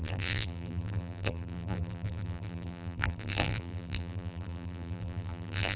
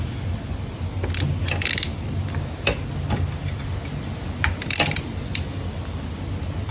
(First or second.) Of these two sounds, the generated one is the first